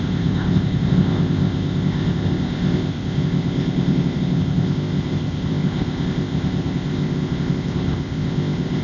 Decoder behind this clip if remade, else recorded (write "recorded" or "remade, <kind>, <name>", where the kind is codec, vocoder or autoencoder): remade, codec, ZipCodec